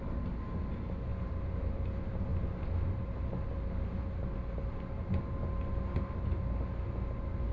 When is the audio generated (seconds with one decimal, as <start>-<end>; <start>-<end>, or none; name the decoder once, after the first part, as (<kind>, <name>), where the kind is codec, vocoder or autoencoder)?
none